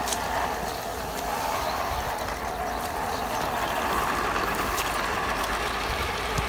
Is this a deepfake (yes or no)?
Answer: no